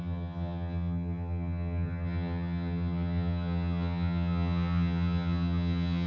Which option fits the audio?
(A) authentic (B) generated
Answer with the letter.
B